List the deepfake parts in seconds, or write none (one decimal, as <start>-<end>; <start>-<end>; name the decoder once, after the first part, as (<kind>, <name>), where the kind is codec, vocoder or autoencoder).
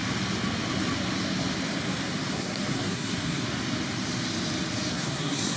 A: 2.3-3.4 (codec, SNAC); 4.9-5.6